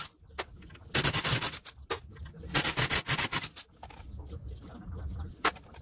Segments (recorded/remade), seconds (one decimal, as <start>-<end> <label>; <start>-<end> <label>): 0.0-2.5 recorded; 2.5-5.8 remade